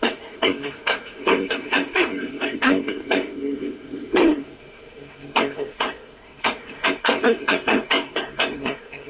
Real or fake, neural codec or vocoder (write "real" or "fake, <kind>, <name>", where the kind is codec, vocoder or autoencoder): fake, codec, SNAC